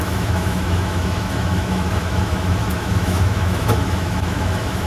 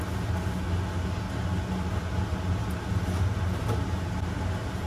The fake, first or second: first